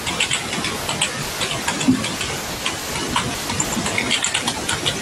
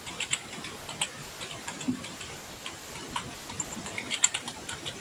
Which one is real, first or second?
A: first